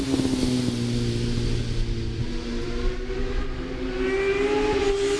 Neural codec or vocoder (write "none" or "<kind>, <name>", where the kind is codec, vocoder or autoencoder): none